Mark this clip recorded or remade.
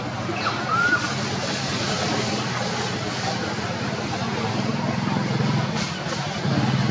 recorded